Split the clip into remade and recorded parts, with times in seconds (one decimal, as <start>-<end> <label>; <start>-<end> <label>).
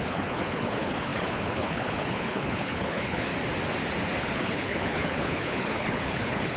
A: 0.0-3.3 remade; 3.3-4.2 recorded; 4.2-6.6 remade